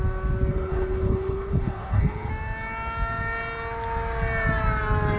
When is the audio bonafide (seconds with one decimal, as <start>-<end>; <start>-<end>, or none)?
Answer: 0.0-0.5; 2.3-5.2

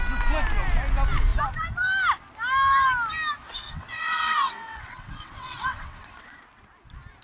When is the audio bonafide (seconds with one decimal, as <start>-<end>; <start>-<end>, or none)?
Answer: 0.0-3.4; 6.4-7.2

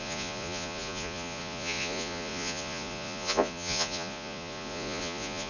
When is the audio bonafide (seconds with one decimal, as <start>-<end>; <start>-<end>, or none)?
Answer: none

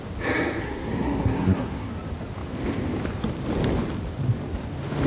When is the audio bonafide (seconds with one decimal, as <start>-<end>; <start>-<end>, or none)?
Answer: 0.0-0.6; 1.9-5.1

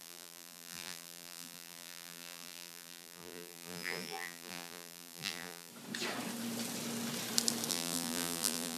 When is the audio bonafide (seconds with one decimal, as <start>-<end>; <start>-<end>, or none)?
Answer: 5.7-7.7

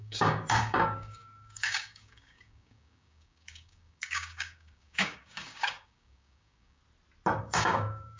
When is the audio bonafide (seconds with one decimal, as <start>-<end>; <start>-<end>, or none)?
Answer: 6.8-7.4

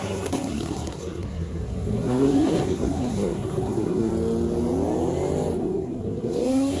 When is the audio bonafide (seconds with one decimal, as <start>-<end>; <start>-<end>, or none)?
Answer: 4.1-5.6